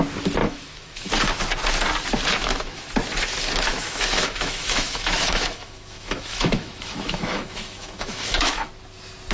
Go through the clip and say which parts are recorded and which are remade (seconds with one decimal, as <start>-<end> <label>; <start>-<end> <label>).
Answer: 0.0-0.4 recorded; 0.4-1.1 remade; 1.1-2.4 recorded; 2.4-2.9 remade; 2.9-3.7 recorded; 3.7-8.7 remade; 8.7-9.3 recorded